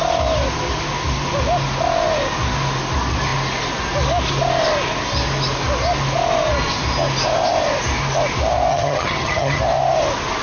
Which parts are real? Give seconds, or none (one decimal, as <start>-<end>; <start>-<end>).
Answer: 0.0-8.7; 9.6-10.4